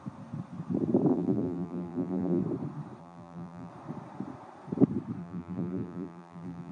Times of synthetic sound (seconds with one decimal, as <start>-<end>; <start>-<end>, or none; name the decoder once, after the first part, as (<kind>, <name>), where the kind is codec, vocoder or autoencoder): 1.1-2.4 (vocoder, BigVGAN v2); 3.0-3.7; 5.2-6.7

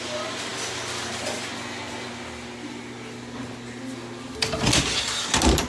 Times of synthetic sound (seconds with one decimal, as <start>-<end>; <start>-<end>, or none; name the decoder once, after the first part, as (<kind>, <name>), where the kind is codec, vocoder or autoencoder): none

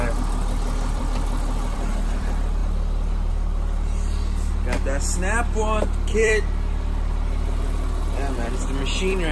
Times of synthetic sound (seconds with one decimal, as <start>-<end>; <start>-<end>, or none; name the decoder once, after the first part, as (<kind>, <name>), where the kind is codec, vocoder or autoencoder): 0.0-2.6 (vocoder, BigVGAN v2); 3.3-9.3

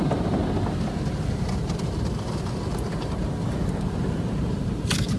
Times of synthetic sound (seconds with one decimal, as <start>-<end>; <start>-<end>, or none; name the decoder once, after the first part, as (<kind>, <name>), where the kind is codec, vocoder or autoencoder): 0.0-0.4 (vocoder, BigVGAN v2); 1.3-5.2

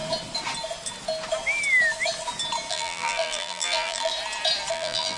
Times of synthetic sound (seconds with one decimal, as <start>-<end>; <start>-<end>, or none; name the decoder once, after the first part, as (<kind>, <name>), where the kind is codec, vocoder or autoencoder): 2.7-4.1 (vocoder, BigVGAN v2); 4.7-5.2

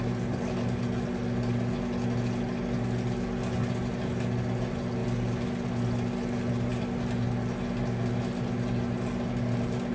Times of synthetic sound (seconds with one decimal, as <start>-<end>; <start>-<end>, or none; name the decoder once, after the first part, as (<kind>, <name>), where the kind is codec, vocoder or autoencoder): none